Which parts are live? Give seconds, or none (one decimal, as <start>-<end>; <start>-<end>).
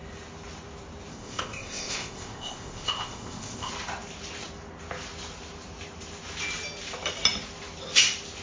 0.0-1.1; 3.7-8.4